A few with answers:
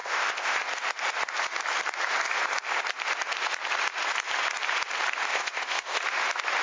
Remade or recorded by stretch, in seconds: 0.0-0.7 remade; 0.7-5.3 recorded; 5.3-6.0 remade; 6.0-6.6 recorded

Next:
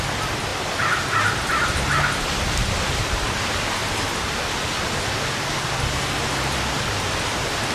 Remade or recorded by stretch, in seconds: 0.0-7.7 recorded

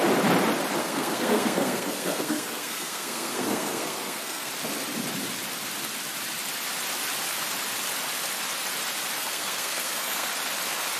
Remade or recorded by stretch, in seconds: 0.0-0.8 recorded; 0.8-4.5 remade; 4.5-9.2 recorded; 9.2-10.3 remade; 10.3-11.0 recorded

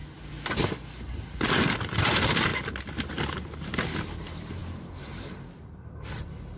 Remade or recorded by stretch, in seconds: 0.0-4.6 recorded; 4.6-6.1 remade; 6.1-6.6 recorded

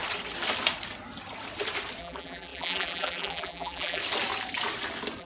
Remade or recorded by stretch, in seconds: 0.0-2.0 recorded; 2.0-4.0 remade; 4.0-5.2 recorded